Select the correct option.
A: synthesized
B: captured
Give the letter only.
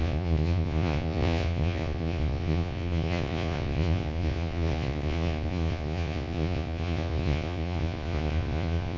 A